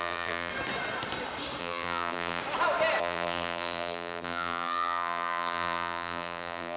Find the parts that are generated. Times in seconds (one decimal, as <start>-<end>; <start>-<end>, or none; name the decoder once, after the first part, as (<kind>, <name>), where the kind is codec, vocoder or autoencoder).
0.0-0.5 (vocoder, BigVGAN v2); 1.6-2.4; 3.0-6.8